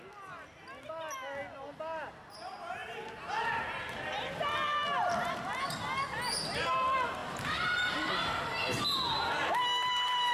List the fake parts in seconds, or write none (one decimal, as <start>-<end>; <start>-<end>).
2.8-3.4; 7.2-8.1